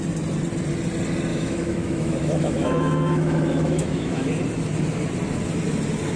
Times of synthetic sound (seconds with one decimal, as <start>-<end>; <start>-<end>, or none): 1.3-4.3